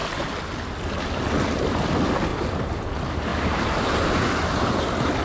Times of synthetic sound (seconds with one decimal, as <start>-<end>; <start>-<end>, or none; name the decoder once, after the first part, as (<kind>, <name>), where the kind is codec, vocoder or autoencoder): 2.3-2.9 (vocoder, BigVGAN v2); 3.3-4.0